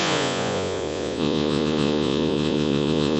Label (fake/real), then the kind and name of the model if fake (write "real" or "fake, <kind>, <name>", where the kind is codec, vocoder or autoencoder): fake, vocoder, Vocos